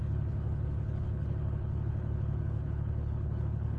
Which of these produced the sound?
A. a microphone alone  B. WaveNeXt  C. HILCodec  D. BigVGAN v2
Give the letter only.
C